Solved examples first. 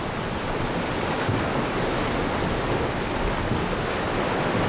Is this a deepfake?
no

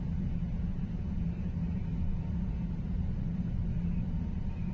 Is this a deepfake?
no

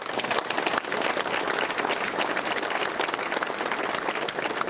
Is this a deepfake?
no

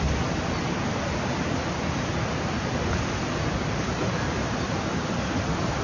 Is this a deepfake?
no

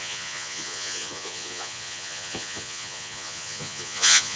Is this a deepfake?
yes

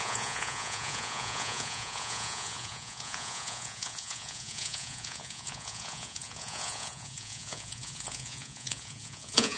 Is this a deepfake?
yes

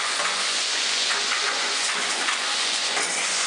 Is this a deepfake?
yes